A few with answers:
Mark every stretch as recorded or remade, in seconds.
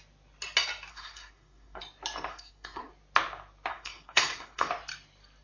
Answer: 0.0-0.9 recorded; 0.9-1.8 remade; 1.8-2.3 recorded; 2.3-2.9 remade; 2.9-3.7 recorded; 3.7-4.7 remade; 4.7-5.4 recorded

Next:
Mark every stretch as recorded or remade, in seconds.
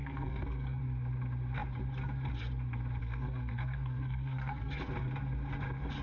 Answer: 0.0-0.8 remade; 0.8-3.0 recorded; 3.0-4.7 remade; 4.7-6.0 recorded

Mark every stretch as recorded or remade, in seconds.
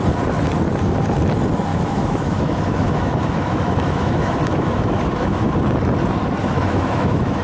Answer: 0.0-1.7 recorded; 1.7-5.5 remade; 5.5-6.4 recorded; 6.4-7.4 remade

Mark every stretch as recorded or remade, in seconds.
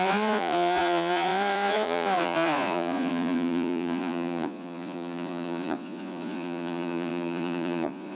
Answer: 0.0-8.1 remade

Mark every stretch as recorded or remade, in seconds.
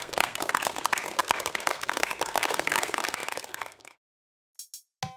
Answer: 0.0-4.2 remade; 4.2-5.2 recorded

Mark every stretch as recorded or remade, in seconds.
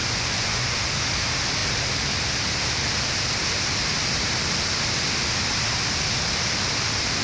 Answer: 0.0-0.7 remade; 0.7-7.2 recorded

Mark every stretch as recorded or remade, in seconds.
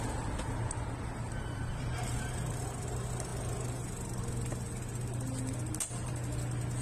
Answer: 0.0-6.8 recorded